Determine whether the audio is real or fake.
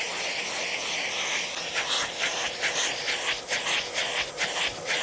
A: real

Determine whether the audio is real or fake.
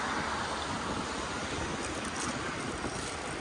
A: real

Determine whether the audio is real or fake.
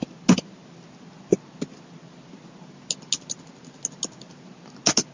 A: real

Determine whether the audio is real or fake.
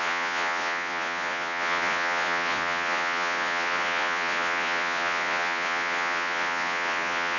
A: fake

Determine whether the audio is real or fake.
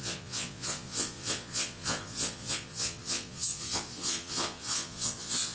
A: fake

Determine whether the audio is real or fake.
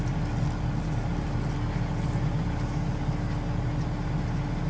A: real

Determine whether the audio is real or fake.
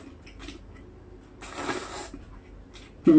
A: real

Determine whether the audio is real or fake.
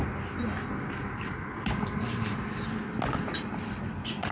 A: real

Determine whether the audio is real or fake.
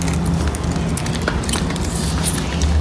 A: real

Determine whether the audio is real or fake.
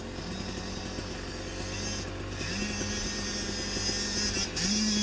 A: real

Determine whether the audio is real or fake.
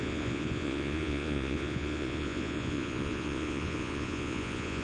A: fake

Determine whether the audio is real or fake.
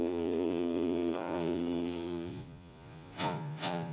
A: fake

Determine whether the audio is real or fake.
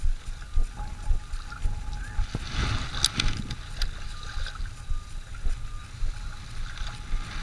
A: real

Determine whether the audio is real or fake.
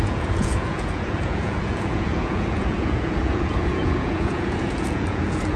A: fake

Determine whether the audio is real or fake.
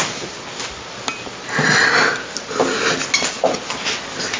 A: real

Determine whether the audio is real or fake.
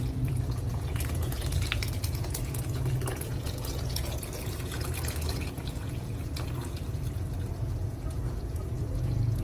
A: fake